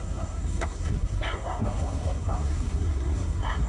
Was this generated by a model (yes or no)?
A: yes